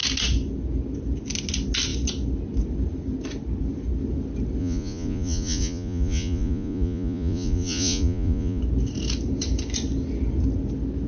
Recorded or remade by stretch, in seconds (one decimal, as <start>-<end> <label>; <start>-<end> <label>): 0.0-4.6 recorded; 4.6-8.6 remade; 8.6-11.1 recorded